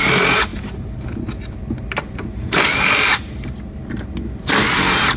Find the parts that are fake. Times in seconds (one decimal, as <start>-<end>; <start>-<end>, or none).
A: none